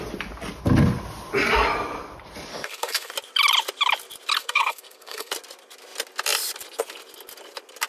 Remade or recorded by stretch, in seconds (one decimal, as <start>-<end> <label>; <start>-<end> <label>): 0.0-2.5 recorded; 2.5-3.1 remade; 3.1-4.4 recorded; 4.4-5.3 remade; 5.3-7.9 recorded